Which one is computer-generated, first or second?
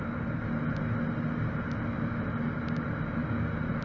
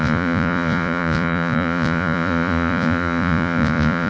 second